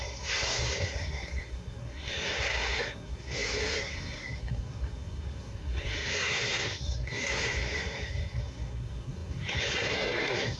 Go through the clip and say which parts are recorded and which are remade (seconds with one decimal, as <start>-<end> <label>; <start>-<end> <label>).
0.0-10.6 remade